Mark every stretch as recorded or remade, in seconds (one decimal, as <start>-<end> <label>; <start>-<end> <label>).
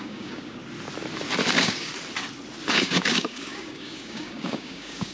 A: 0.0-0.6 remade; 0.6-1.5 recorded; 1.5-1.9 remade; 1.9-2.7 recorded; 2.7-5.1 remade